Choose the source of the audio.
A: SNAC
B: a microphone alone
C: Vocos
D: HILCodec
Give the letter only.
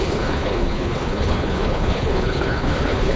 D